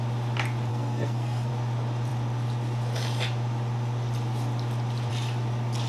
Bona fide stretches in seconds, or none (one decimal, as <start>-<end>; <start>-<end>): 0.0-0.7; 1.5-5.9